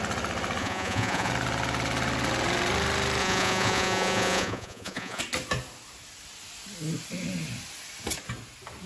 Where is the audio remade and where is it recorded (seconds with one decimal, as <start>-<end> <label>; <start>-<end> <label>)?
0.0-0.6 recorded; 0.6-1.3 remade; 1.3-3.2 recorded; 3.2-5.2 remade; 5.2-8.9 recorded